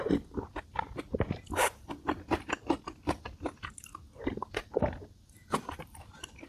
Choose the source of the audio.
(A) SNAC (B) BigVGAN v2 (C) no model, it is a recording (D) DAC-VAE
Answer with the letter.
C